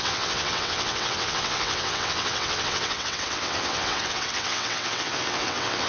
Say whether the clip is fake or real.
fake